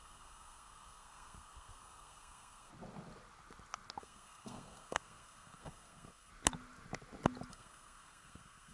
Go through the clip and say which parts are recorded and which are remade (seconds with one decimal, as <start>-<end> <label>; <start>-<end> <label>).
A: 0.0-2.7 remade; 2.7-4.0 recorded; 4.0-6.3 remade; 6.3-7.5 recorded; 7.5-8.7 remade